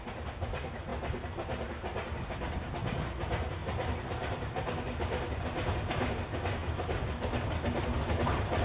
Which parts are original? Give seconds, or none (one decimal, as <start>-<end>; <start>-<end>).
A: 0.0-8.6